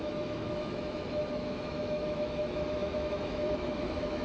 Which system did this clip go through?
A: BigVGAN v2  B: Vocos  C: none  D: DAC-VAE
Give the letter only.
D